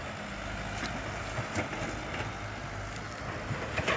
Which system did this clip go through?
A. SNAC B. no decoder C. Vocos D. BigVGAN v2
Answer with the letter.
B